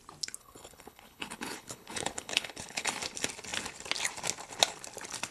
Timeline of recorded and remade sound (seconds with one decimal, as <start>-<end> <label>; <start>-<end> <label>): 0.0-0.4 recorded; 0.4-2.9 remade; 2.9-5.3 recorded